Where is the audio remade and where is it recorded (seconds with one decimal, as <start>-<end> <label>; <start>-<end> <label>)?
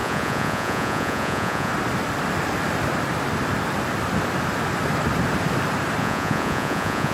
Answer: 0.0-1.7 remade; 1.7-6.0 recorded; 6.0-7.1 remade